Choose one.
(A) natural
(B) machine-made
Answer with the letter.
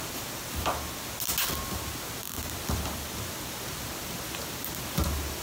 A